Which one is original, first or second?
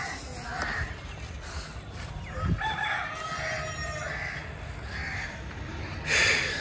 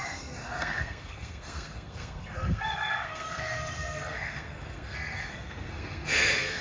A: first